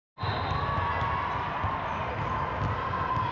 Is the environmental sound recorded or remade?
recorded